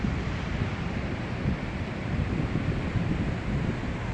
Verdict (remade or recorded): remade